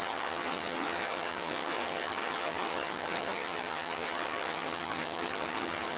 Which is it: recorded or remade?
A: remade